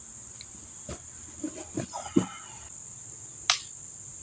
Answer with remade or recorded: recorded